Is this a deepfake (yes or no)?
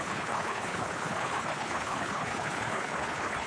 yes